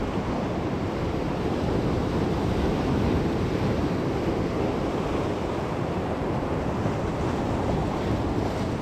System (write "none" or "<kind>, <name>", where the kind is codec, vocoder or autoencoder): vocoder, BigVGAN v2